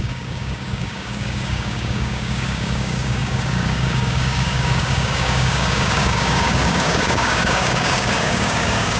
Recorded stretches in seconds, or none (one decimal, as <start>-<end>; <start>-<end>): none